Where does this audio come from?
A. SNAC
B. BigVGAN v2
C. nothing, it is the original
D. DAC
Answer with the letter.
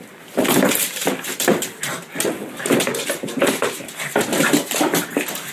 C